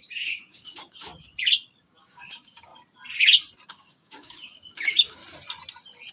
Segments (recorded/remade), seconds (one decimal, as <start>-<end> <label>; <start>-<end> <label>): 0.0-1.1 remade; 1.1-1.8 recorded; 1.8-2.7 remade; 2.7-3.7 recorded; 3.7-5.2 remade; 5.2-6.1 recorded